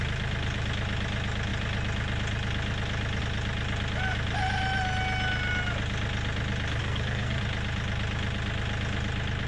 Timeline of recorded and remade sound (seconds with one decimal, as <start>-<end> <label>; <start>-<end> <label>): 0.0-6.8 recorded; 6.8-7.4 remade; 7.4-9.5 recorded